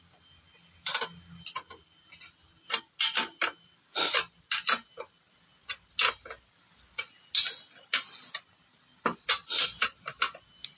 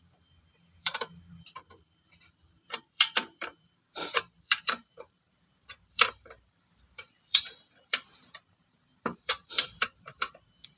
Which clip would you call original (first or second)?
first